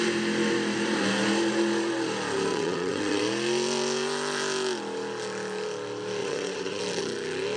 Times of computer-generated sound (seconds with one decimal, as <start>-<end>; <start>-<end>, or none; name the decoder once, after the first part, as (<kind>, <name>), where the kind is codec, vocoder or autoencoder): 2.5-3.2 (vocoder, WaveNeXt); 6.2-6.8